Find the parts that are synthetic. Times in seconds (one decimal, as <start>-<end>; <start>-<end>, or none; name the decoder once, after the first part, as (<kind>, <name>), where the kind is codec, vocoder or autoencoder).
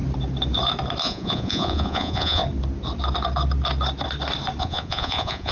1.0-2.4 (vocoder, Vocos); 4.6-5.5